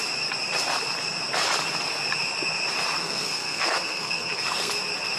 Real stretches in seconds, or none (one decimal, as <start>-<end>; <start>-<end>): 0.0-3.0; 4.7-5.2